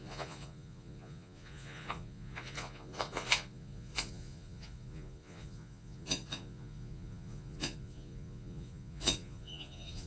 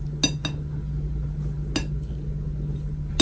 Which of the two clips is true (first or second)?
second